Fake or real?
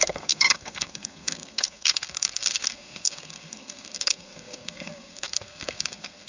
fake